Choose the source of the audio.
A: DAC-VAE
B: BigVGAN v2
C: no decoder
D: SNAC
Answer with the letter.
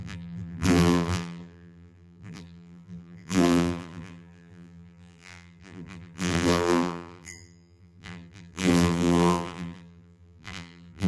B